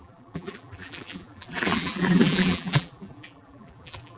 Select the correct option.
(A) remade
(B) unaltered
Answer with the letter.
A